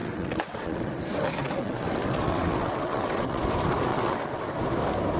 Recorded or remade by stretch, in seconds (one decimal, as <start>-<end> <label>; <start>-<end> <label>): 0.0-0.9 remade; 0.9-1.4 recorded; 1.4-3.4 remade; 3.4-3.9 recorded; 3.9-4.4 remade; 4.4-5.2 recorded